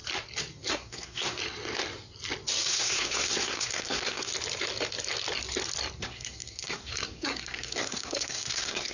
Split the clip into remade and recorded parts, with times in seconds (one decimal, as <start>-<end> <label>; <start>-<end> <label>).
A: 0.0-0.7 recorded; 0.7-1.4 remade; 1.4-2.7 recorded; 2.7-4.3 remade; 4.3-6.0 recorded; 6.0-8.9 remade